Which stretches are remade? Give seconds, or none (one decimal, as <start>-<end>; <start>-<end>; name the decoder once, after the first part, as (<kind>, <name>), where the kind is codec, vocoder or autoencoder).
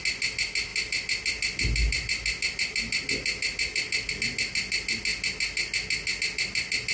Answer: none